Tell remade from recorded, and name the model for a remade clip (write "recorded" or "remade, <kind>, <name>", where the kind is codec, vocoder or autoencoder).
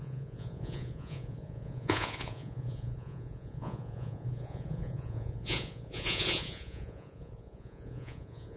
remade, vocoder, Vocos